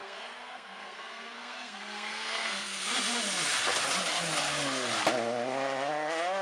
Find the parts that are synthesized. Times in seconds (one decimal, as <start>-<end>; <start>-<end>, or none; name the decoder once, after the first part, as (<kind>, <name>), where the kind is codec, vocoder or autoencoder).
0.0-2.9 (codec, SNAC)